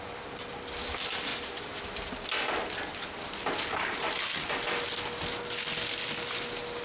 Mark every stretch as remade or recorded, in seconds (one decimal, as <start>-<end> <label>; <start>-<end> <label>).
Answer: 0.0-1.3 recorded; 1.3-1.8 remade; 1.8-6.8 recorded